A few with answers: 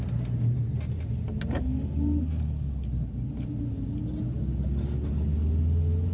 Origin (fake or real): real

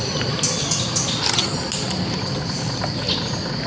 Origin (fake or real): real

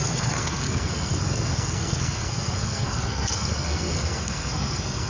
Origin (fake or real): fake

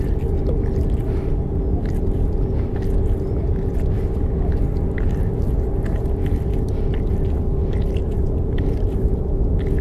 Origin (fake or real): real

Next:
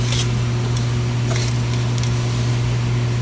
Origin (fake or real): real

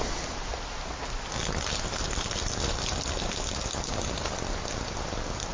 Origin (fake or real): real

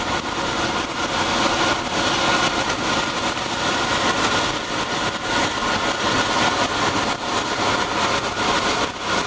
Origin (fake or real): real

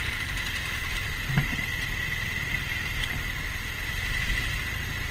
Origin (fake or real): fake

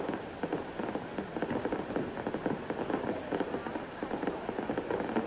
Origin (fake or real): real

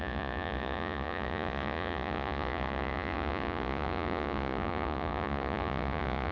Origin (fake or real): fake